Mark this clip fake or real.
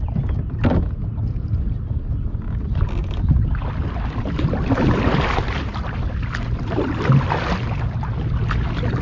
real